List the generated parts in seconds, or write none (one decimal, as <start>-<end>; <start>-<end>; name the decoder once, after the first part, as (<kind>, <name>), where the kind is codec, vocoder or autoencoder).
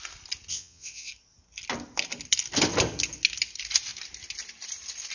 0.5-1.1 (vocoder, WaveNeXt)